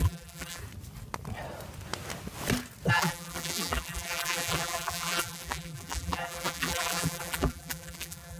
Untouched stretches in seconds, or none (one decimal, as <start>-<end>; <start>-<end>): 0.6-2.9